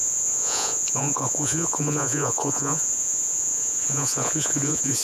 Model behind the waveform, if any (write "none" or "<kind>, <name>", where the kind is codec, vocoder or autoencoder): vocoder, Vocos